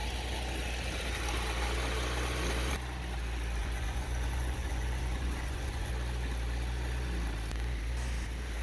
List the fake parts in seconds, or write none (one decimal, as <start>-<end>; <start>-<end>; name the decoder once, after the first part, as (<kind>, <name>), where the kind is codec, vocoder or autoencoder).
3.6-5.9 (vocoder, Vocos)